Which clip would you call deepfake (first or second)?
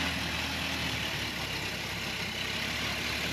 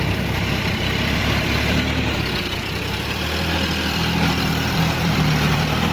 second